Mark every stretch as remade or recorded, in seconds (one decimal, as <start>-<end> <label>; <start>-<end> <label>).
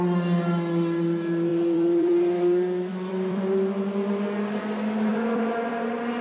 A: 0.0-1.5 recorded; 1.5-4.6 remade; 4.6-5.1 recorded; 5.1-5.7 remade; 5.7-6.2 recorded